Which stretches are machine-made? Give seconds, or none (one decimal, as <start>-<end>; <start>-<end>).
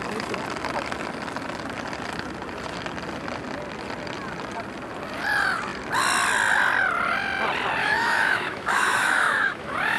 7.8-10.0